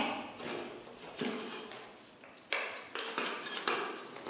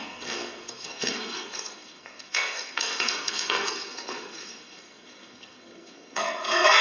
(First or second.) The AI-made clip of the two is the second